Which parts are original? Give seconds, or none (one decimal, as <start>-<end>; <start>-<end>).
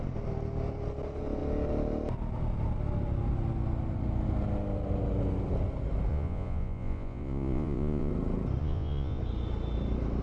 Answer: 0.0-6.1; 8.1-8.6; 9.2-10.2